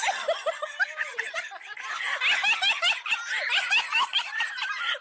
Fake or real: real